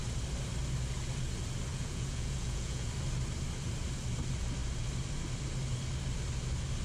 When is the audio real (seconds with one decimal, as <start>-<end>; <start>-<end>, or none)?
0.0-1.7; 2.9-6.8